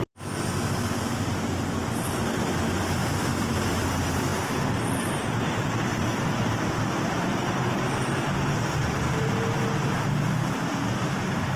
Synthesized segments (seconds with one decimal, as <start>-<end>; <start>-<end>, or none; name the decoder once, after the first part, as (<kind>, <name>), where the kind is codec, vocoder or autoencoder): 3.0-3.5 (vocoder, BigVGAN v2); 5.9-7.0